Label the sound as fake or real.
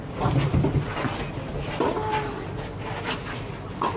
real